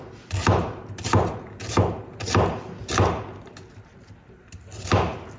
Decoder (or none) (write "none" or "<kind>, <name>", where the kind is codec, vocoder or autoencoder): none